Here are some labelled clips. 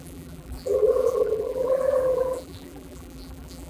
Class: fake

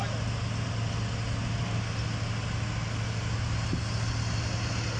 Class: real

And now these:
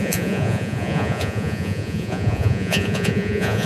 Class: fake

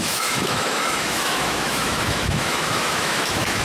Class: fake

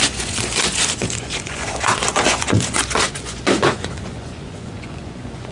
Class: fake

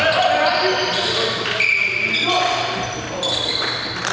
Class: real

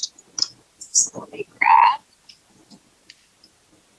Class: real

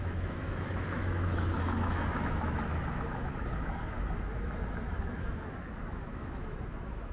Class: fake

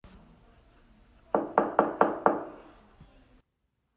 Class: real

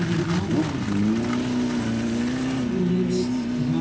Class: real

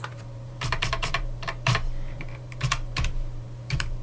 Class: fake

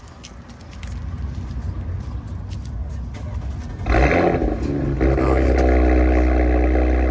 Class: real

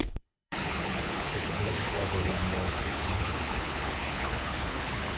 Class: fake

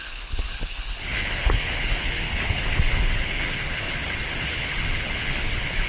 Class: fake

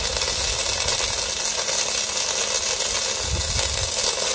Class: real